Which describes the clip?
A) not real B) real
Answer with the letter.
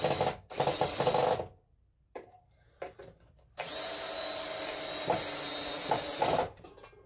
B